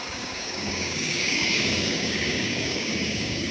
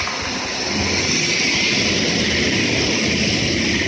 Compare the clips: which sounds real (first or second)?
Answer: second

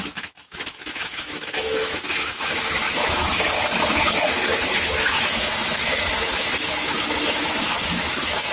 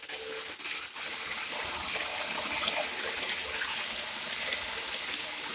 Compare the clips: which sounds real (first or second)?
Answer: second